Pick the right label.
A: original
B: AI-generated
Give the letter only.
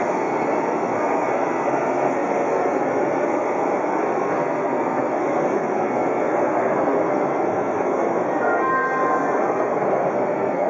B